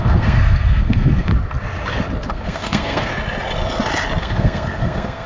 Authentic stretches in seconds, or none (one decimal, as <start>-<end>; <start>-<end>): 1.3-2.3; 3.1-4.2